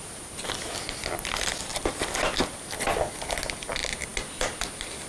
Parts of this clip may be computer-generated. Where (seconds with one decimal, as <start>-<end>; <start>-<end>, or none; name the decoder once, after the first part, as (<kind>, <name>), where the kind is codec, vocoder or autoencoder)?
none